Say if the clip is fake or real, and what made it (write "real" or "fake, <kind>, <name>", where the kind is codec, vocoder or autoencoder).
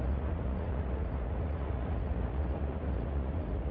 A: fake, vocoder, Vocos